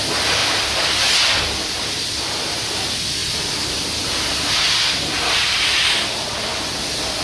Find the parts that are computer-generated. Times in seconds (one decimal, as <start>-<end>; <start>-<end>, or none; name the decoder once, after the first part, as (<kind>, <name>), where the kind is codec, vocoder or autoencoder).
none